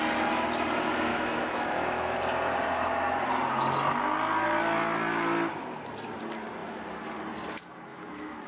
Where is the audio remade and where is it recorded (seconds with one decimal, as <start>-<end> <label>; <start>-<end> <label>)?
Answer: 0.0-1.1 recorded; 1.1-2.2 remade; 2.2-7.9 recorded; 7.9-8.5 remade